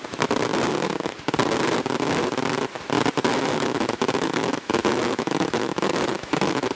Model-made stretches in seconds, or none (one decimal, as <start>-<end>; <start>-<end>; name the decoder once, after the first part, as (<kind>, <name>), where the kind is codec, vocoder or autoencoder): 3.3-6.8 (autoencoder, DAC-VAE)